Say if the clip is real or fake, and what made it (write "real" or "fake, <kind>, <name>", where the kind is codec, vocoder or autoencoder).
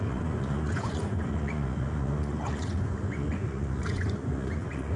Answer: fake, vocoder, Vocos